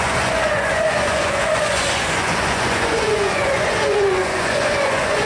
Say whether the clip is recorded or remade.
remade